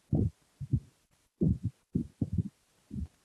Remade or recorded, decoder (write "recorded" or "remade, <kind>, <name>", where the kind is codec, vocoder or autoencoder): recorded